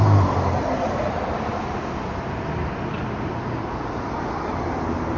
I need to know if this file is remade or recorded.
recorded